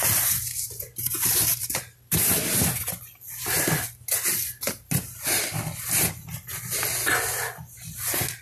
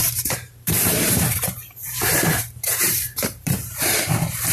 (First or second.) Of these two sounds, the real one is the first